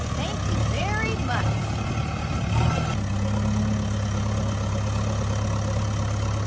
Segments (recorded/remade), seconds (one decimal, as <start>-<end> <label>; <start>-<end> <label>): 0.0-6.5 recorded